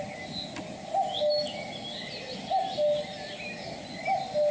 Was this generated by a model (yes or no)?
no